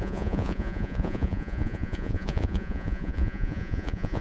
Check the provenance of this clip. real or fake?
fake